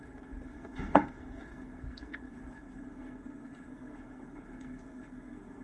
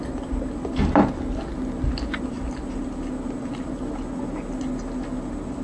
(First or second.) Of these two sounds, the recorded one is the second